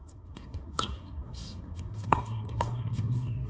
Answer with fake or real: fake